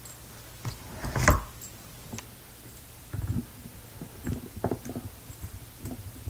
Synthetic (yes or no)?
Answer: no